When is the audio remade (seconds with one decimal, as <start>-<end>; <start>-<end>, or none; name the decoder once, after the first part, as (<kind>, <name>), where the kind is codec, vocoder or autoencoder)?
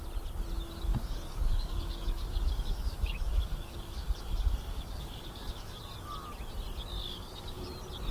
0.9-5.8 (codec, DAC); 7.0-7.6